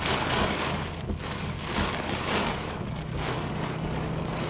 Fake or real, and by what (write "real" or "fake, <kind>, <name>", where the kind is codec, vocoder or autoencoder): fake, codec, DAC